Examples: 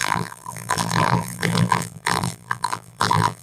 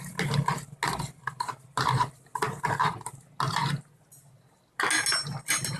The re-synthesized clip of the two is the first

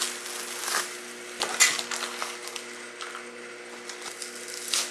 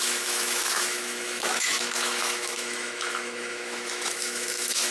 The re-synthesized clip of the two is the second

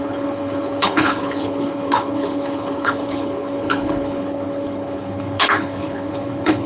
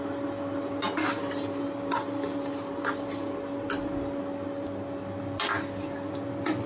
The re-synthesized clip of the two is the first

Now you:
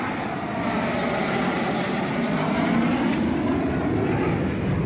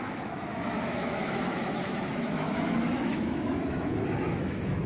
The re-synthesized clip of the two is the second